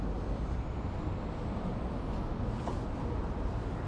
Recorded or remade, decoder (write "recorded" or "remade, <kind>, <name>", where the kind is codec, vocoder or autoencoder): recorded